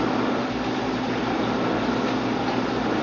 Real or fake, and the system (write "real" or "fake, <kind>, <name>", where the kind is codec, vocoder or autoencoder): real